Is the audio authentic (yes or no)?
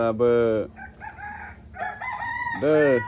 yes